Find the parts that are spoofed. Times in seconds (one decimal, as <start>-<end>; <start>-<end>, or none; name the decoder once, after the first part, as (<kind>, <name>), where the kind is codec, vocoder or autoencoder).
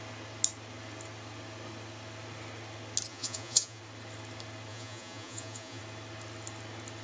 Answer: 3.1-3.8 (vocoder, Vocos); 4.7-5.8